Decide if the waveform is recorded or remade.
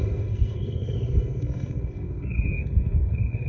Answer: remade